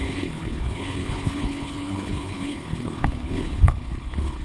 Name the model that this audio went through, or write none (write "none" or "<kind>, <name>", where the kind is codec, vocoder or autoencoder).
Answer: codec, HILCodec